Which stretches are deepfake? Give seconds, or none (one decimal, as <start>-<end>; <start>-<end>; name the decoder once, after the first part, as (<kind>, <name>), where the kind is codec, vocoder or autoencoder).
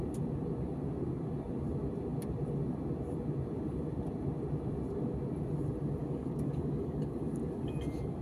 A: 6.0-7.3 (codec, DAC)